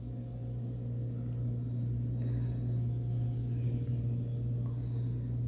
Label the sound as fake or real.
real